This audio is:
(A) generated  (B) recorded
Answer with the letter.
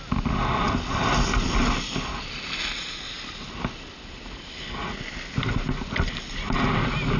B